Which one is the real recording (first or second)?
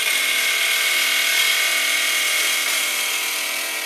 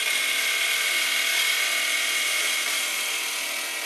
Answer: first